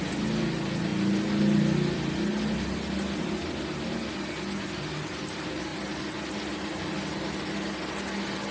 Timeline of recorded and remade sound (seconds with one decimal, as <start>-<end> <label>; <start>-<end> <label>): 0.0-8.5 recorded